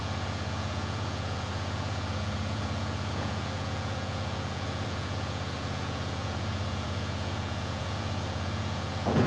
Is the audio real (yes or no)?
no